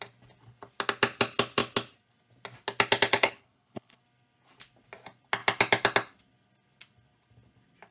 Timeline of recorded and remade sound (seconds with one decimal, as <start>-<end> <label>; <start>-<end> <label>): 0.0-3.1 recorded; 3.1-4.0 remade; 4.0-7.9 recorded